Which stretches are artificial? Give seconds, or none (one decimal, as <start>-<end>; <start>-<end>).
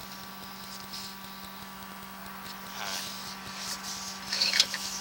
1.6-2.2; 4.3-5.0